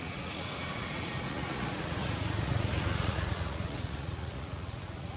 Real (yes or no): no